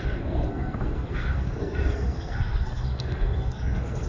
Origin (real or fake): fake